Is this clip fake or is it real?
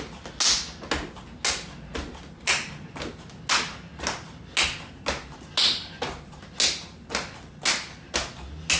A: real